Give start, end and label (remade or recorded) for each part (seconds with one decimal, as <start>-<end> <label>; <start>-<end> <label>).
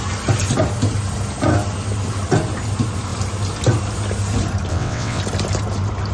0.0-4.7 recorded; 4.7-5.2 remade; 5.2-6.1 recorded